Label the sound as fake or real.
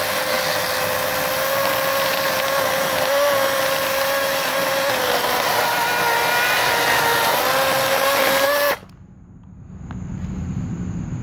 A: real